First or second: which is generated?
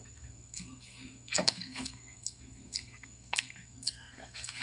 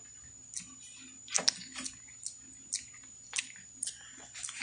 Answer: first